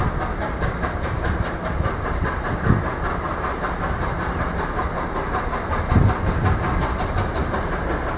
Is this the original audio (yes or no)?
yes